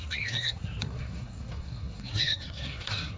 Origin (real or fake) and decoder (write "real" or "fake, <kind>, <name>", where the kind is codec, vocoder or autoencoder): fake, codec, SNAC